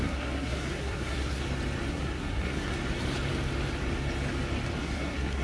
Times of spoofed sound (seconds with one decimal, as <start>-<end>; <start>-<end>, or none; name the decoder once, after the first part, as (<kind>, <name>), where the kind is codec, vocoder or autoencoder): 0.0-1.4 (codec, SNAC); 1.9-2.7; 4.8-5.4